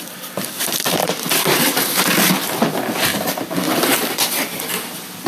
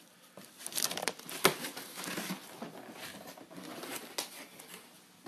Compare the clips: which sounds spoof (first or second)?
first